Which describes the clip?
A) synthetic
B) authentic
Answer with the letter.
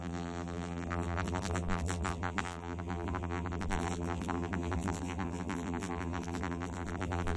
A